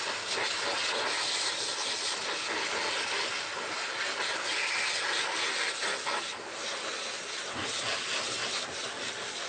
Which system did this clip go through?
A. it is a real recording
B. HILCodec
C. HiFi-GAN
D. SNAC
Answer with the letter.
A